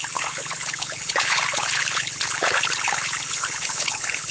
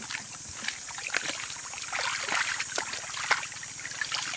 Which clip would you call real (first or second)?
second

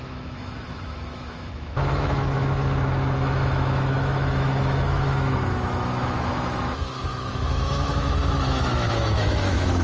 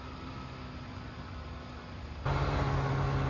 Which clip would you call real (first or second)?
second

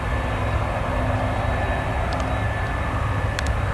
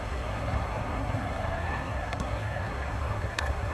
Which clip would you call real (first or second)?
first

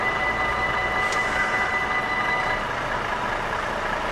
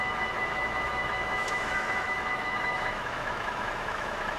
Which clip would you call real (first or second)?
first